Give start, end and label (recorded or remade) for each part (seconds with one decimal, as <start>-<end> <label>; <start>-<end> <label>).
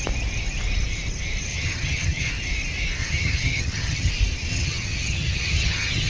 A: 0.0-1.5 recorded; 1.5-2.3 remade; 2.3-3.0 recorded; 3.0-4.1 remade; 4.1-4.5 recorded; 4.5-6.1 remade